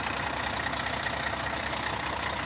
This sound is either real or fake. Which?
real